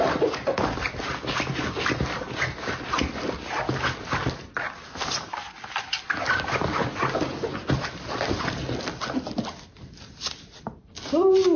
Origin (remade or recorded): recorded